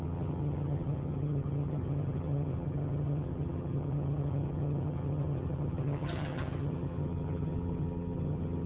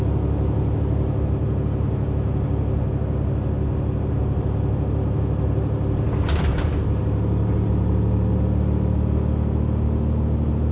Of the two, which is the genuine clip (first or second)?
second